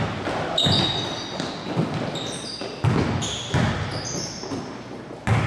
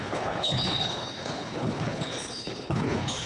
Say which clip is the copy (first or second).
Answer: second